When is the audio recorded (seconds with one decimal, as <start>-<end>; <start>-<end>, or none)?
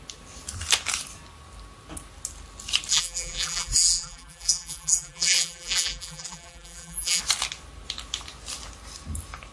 0.0-2.9; 7.2-9.5